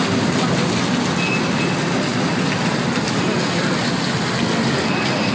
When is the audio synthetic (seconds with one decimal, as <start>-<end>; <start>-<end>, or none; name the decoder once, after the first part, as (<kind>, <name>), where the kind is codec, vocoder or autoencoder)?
none